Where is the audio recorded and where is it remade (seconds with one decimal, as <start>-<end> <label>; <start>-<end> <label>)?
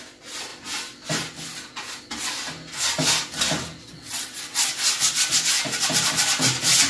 0.0-3.8 recorded; 3.8-4.6 remade; 4.6-6.9 recorded